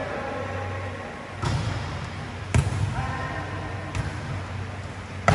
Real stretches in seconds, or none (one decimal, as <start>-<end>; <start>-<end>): 0.0-5.3